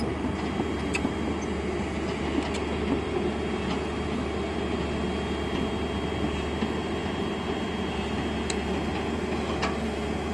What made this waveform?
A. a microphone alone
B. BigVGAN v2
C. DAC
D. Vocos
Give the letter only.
A